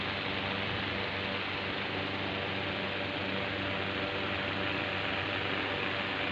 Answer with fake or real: real